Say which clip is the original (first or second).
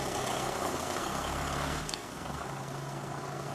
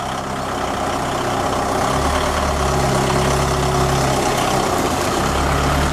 second